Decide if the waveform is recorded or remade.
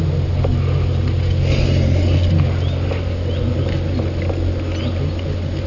recorded